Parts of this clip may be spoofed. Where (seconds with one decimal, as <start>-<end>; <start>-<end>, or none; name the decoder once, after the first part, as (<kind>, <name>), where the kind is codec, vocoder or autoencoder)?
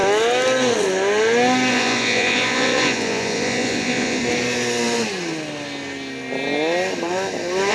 1.7-4.2 (vocoder, Vocos)